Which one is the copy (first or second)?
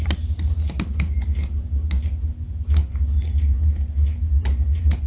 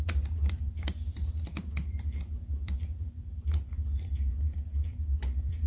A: second